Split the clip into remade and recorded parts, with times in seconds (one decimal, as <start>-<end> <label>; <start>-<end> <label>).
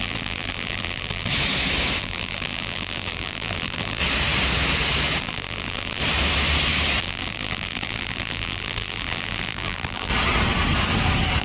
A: 0.0-1.3 remade; 1.3-2.0 recorded; 2.0-4.0 remade; 4.0-5.2 recorded; 5.2-6.0 remade; 6.0-7.0 recorded; 7.0-10.1 remade; 10.1-11.4 recorded